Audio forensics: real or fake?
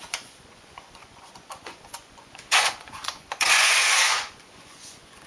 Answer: fake